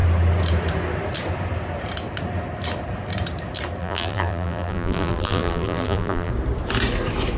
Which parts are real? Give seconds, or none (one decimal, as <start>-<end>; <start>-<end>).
0.0-3.8; 6.3-7.4